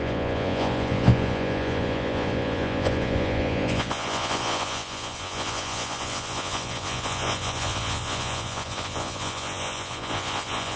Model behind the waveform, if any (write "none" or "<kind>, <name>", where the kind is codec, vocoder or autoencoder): vocoder, Vocos